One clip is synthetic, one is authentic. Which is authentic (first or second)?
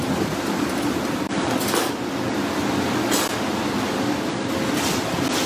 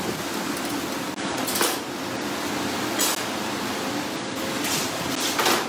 second